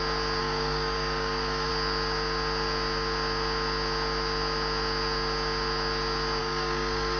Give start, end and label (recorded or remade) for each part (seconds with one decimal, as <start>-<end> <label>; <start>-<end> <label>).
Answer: 0.0-0.4 recorded; 0.4-1.7 remade; 1.7-6.4 recorded; 6.4-7.2 remade